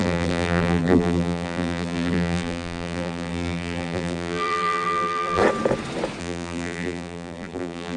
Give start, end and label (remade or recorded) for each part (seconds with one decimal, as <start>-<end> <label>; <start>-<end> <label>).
0.0-5.4 remade; 5.4-6.2 recorded; 6.2-8.0 remade